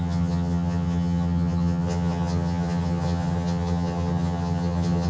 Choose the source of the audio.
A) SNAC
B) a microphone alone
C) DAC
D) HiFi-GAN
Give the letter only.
D